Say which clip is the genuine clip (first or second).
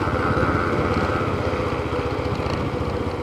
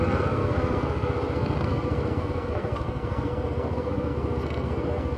first